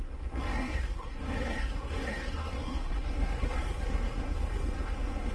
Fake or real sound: fake